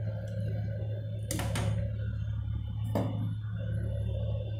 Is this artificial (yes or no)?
no